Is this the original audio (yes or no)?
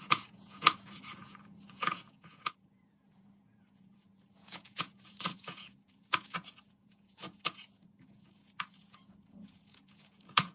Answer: no